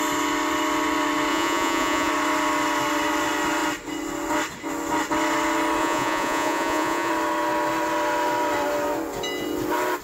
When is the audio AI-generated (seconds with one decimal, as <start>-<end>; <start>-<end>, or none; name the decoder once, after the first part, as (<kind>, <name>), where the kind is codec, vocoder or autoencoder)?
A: 1.3-2.1 (vocoder, Vocos); 5.8-7.1